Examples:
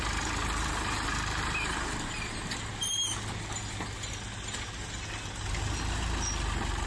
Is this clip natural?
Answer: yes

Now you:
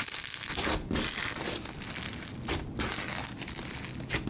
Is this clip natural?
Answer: yes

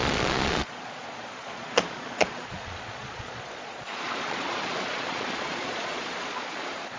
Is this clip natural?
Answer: no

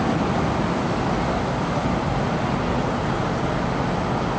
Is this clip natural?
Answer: yes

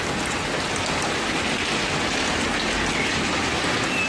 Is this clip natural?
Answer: yes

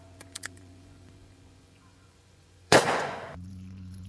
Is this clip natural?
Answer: no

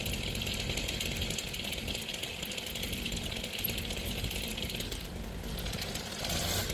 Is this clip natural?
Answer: yes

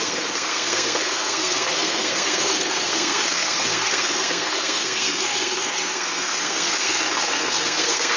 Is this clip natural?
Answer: no